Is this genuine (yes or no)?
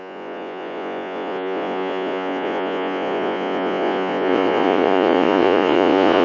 no